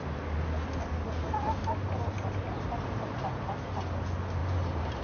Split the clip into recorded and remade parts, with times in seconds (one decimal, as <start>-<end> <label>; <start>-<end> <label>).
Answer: 0.0-2.4 recorded; 2.4-3.2 remade; 3.2-4.4 recorded; 4.4-5.0 remade